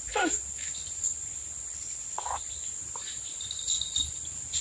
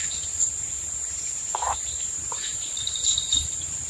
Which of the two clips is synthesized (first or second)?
second